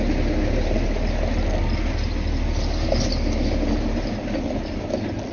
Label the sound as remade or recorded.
recorded